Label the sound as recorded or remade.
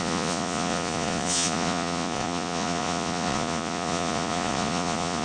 remade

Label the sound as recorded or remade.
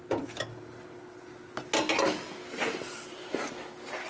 recorded